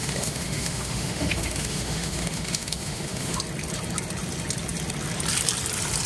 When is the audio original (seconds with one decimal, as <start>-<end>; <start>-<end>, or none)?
3.4-6.1